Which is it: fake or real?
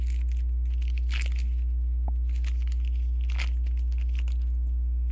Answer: real